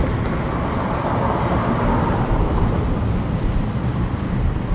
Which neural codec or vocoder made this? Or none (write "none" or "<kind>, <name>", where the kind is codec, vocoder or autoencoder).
none